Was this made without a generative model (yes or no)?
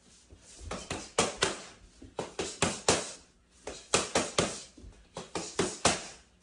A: yes